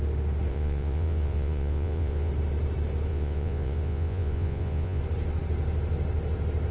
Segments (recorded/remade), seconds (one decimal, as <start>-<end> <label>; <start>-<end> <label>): 0.0-0.5 recorded; 0.5-2.3 remade; 2.3-3.1 recorded; 3.1-5.0 remade; 5.0-6.7 recorded